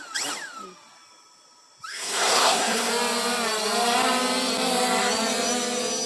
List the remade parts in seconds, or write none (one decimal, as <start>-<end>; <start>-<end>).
1.9-2.9